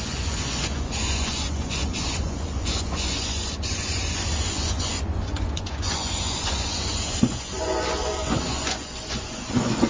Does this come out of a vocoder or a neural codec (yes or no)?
yes